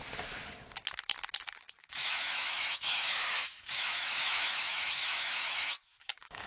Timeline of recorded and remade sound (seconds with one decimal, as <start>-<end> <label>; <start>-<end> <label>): 0.0-1.8 recorded; 1.8-6.5 remade